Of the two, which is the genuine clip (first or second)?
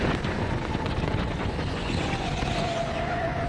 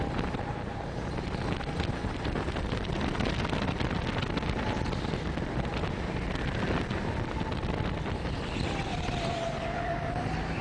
second